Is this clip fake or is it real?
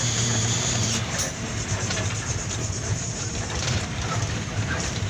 fake